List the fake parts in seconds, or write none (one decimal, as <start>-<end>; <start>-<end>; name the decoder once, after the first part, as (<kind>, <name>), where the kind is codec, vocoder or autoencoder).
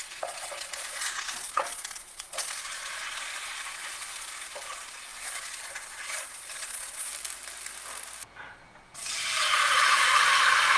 0.0-7.1 (vocoder, Vocos); 8.5-10.8